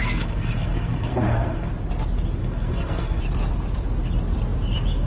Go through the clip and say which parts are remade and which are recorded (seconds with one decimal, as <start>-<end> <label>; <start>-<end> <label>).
0.0-1.7 remade; 1.7-2.4 recorded; 2.4-3.2 remade; 3.2-5.1 recorded